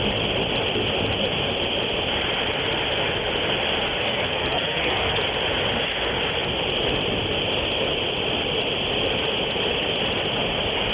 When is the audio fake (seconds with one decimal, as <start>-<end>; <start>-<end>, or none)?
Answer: 4.0-5.2